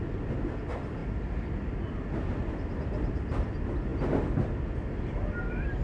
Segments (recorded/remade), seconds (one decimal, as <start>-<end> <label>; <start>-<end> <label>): 0.0-5.8 recorded